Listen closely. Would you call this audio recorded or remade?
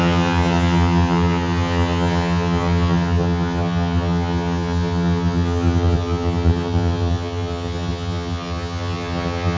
remade